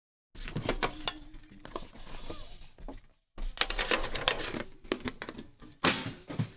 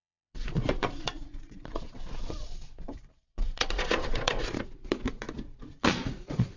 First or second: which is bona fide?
first